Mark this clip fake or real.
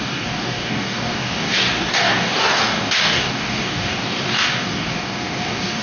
fake